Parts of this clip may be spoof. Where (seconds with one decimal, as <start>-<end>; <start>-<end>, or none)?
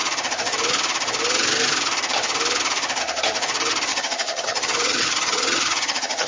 3.9-6.3